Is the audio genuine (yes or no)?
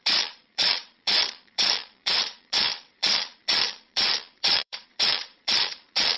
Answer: no